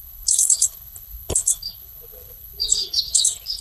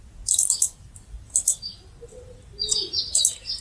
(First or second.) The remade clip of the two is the first